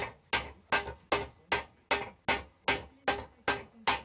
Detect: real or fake real